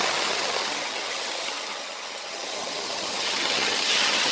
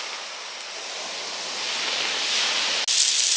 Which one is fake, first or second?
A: first